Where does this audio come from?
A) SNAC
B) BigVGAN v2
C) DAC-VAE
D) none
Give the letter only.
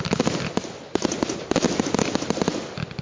D